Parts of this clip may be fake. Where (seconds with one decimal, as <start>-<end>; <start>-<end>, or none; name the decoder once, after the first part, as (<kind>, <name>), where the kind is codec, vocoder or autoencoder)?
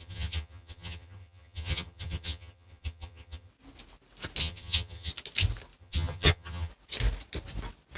0.0-3.5 (vocoder, HiFi-GAN); 4.4-5.1; 5.8-6.7